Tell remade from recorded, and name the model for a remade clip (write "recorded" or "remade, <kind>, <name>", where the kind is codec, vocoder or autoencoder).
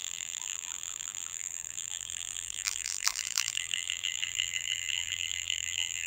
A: remade, vocoder, BigVGAN v2